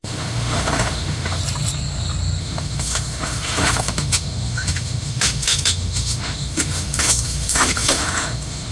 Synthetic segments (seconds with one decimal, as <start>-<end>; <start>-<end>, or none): 0.0-1.4; 2.4-8.7

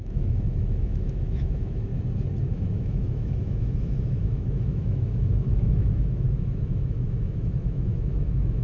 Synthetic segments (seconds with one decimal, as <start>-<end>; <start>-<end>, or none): 0.0-1.9; 2.5-8.6

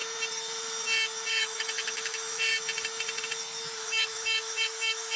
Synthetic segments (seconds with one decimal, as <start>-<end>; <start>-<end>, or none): 1.3-2.5; 3.8-5.2

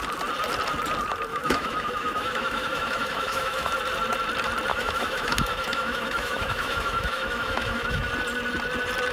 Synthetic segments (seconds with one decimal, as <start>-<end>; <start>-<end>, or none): 1.3-3.7; 4.7-8.1

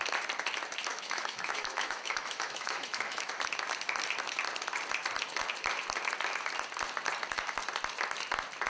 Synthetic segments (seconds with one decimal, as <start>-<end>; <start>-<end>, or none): 0.9-3.3

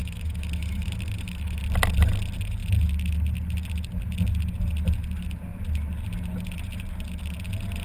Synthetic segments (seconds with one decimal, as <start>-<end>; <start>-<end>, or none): 0.0-1.6